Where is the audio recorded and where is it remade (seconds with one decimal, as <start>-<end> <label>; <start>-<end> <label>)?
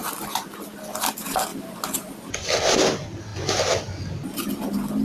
0.0-5.0 recorded